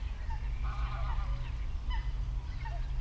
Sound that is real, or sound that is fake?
real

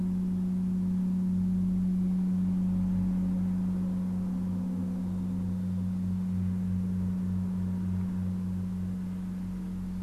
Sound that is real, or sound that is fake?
real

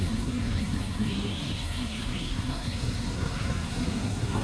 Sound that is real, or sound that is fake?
fake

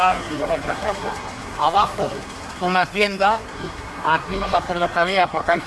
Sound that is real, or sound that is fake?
fake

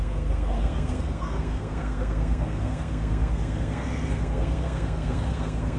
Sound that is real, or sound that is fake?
fake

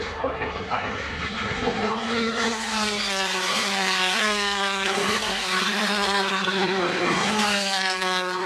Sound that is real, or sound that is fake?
fake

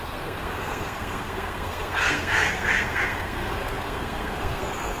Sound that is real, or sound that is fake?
fake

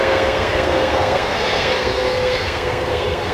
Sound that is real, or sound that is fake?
fake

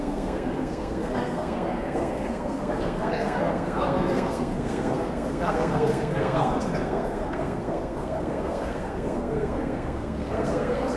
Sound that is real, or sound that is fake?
fake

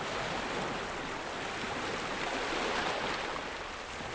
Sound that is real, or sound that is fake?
real